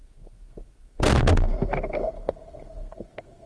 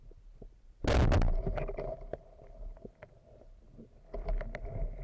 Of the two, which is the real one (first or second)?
second